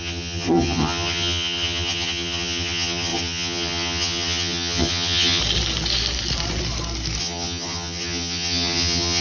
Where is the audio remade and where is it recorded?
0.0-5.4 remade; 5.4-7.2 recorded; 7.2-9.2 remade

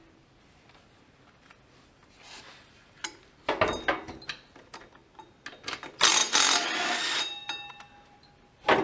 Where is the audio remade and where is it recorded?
0.0-8.8 recorded